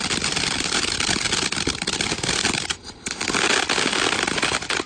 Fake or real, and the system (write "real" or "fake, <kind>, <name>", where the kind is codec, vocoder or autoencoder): real